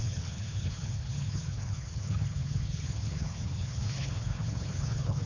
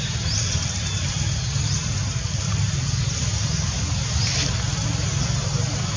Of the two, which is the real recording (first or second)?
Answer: second